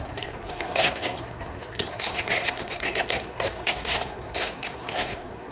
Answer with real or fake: fake